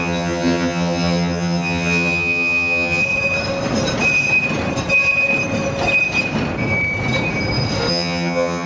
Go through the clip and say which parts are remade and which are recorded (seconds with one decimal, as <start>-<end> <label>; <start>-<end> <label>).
0.0-3.0 remade; 3.0-7.9 recorded; 7.9-8.7 remade